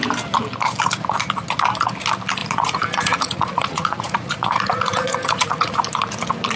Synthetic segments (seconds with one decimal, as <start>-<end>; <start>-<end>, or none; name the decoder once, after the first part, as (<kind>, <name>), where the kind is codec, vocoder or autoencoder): 2.4-5.8 (vocoder, Vocos)

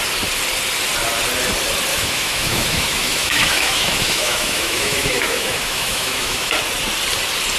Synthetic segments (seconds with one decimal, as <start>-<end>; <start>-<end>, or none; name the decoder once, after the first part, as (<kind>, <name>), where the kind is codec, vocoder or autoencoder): 1.9-6.5 (autoencoder, DAC-VAE)